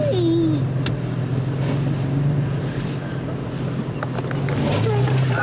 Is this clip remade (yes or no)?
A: no